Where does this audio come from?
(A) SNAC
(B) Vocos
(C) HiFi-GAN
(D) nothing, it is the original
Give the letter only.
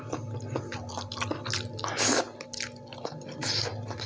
D